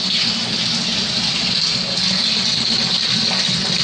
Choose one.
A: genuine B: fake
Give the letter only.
A